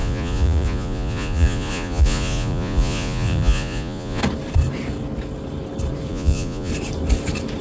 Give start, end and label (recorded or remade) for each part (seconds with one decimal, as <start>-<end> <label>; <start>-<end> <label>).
0.0-4.2 remade; 4.2-6.1 recorded; 6.1-6.7 remade; 6.7-7.6 recorded